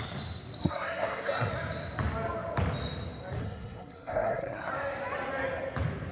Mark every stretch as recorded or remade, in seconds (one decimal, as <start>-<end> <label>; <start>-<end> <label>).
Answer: 0.0-0.6 recorded; 0.6-1.5 remade; 1.5-3.4 recorded; 3.4-4.7 remade; 4.7-6.1 recorded